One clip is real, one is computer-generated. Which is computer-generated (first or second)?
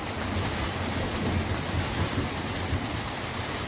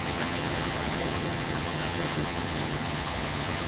second